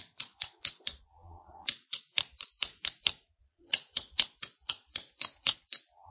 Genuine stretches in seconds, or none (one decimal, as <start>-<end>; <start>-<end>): 2.1-3.4

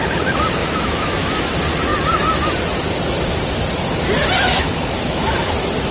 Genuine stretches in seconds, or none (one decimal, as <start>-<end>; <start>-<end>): 0.0-0.6; 1.4-4.5; 5.5-5.9

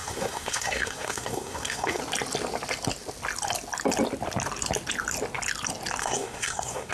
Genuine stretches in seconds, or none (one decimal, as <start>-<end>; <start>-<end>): 2.0-6.0

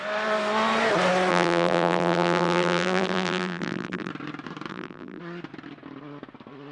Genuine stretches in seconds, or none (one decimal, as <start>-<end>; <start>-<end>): 0.0-1.3; 4.1-4.7; 5.2-6.7

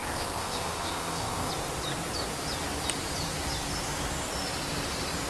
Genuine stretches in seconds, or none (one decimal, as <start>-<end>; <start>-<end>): 1.5-5.3